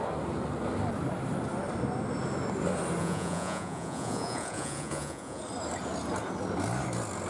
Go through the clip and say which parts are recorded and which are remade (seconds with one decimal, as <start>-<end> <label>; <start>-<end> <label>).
0.0-3.0 recorded; 3.0-5.4 remade; 5.4-7.3 recorded